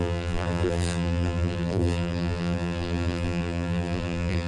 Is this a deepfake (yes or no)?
yes